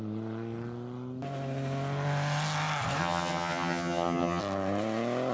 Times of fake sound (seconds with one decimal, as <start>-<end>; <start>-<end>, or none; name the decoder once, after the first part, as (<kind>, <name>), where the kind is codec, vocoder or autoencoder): 3.0-4.4 (vocoder, HiFi-GAN)

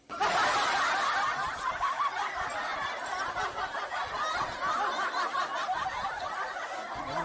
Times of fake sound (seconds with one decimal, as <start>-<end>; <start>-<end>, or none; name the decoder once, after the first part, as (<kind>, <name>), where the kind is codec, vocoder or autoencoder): none

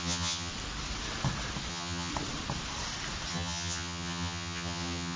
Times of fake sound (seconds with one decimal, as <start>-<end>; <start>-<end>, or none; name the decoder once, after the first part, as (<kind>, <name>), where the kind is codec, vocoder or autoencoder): 0.0-0.5 (vocoder, HiFi-GAN); 1.7-2.1; 3.3-5.2

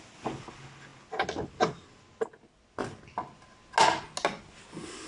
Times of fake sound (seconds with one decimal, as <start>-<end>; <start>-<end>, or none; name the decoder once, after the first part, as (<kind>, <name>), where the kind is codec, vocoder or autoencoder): none